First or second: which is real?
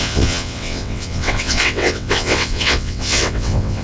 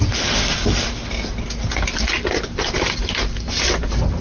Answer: second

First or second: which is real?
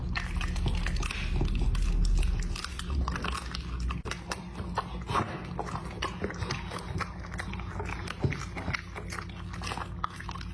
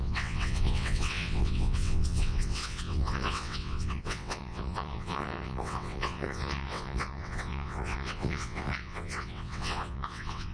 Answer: first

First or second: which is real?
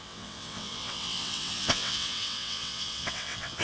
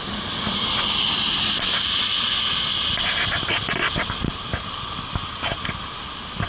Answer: second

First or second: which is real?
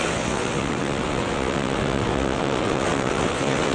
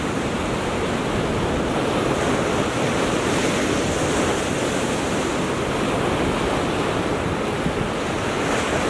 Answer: second